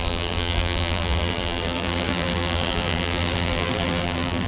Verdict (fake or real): fake